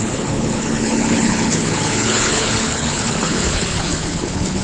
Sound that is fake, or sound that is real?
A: fake